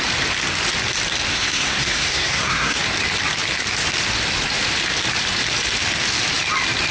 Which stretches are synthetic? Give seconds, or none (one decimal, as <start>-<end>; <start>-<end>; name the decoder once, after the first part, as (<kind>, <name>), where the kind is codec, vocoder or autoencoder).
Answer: 1.3-2.8 (codec, SNAC)